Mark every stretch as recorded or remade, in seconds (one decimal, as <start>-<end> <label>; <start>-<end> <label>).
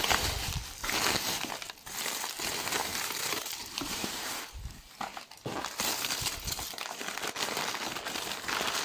0.0-2.9 recorded; 2.9-4.3 remade; 4.3-8.8 recorded